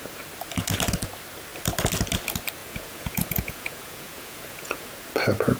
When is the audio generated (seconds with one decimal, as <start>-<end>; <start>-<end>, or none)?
2.6-4.9